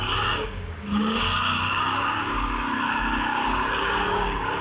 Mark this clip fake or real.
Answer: fake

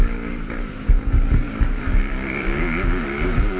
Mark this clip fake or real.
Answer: fake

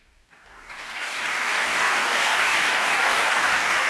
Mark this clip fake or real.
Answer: fake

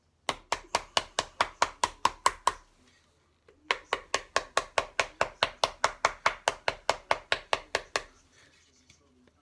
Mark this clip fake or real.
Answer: real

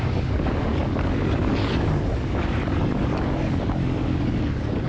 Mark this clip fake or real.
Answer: fake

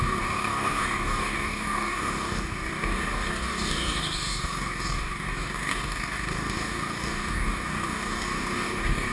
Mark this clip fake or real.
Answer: fake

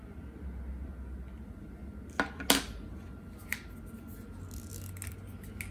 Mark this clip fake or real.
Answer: real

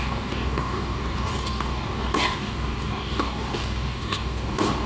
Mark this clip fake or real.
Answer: fake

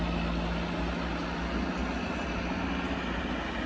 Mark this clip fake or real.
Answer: real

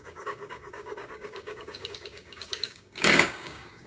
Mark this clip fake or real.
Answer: fake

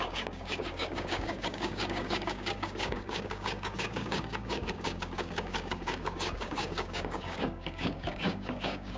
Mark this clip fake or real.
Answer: fake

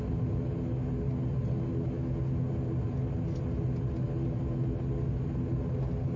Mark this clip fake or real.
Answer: real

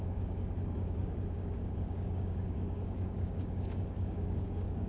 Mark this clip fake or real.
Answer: fake